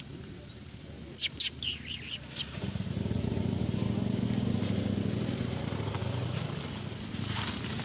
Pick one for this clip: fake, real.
real